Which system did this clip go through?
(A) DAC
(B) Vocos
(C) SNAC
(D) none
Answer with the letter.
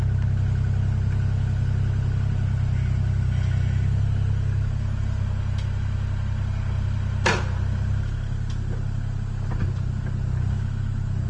D